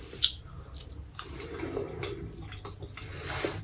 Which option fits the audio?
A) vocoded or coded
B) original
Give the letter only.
B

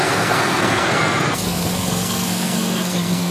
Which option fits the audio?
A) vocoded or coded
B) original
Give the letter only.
A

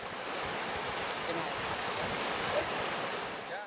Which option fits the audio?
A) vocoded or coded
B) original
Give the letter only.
B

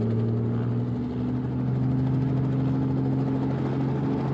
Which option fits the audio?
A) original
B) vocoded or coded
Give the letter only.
A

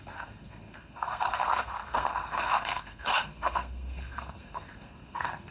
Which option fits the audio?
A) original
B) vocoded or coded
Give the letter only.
B